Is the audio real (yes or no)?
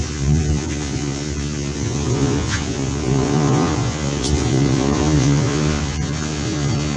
no